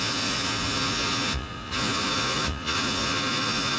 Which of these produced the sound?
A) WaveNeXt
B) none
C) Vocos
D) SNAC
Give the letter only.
C